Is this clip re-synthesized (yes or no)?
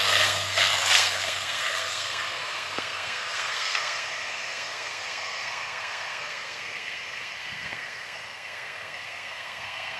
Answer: yes